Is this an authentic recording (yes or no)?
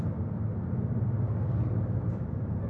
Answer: yes